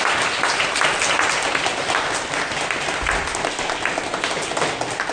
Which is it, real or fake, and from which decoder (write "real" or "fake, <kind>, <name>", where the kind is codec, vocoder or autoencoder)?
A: real